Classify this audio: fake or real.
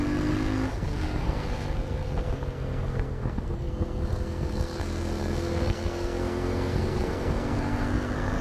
fake